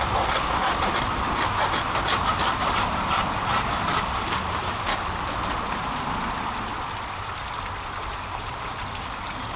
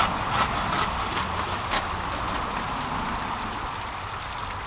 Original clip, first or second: second